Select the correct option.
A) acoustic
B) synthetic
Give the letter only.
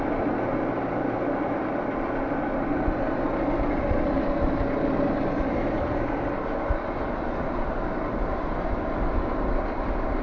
A